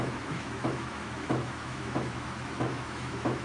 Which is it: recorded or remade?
remade